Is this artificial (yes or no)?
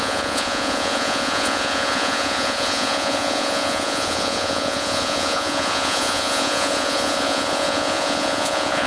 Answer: yes